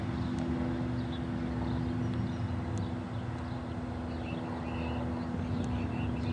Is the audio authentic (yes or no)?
yes